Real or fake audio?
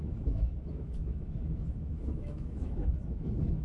fake